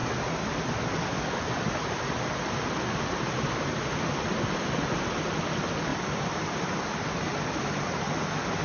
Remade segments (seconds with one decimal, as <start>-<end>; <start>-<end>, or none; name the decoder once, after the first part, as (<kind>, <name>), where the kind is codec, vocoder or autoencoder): none